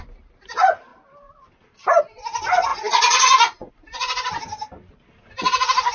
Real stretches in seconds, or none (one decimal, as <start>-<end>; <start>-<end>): 0.0-2.7; 3.7-5.9